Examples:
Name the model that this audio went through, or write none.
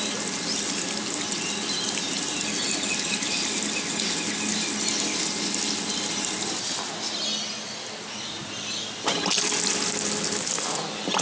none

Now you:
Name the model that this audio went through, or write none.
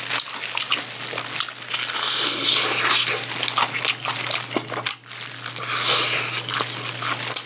none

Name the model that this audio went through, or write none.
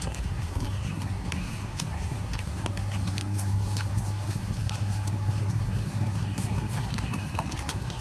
codec, SNAC